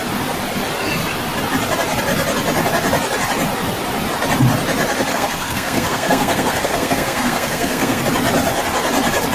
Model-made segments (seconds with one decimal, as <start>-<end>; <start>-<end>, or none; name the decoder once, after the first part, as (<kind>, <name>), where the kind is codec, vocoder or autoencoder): 5.1-8.0 (codec, SNAC)